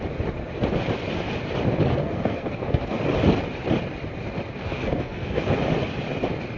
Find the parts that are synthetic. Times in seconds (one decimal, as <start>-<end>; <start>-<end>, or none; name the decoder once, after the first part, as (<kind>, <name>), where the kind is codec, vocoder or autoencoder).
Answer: 2.0-3.0 (codec, SNAC); 4.6-5.6